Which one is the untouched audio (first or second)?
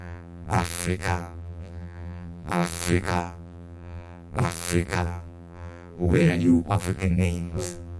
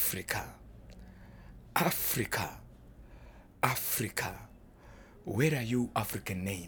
second